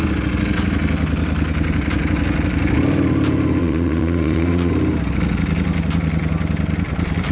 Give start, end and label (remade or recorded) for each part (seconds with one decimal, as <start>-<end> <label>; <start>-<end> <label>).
0.0-3.6 recorded; 3.6-4.7 remade; 4.7-7.3 recorded